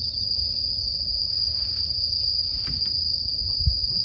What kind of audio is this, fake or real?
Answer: real